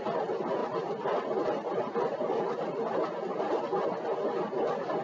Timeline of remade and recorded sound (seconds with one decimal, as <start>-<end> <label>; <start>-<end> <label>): 0.0-0.6 recorded; 0.6-3.6 remade; 3.6-5.0 recorded